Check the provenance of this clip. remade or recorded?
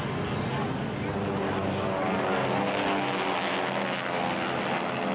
recorded